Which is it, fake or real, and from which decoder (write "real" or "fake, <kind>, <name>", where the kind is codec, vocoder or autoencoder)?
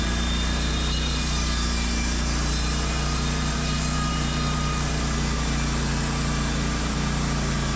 fake, vocoder, BigVGAN v2